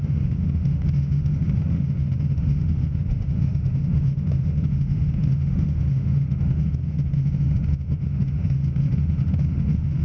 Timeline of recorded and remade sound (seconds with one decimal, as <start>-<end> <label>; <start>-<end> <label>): 0.0-10.0 remade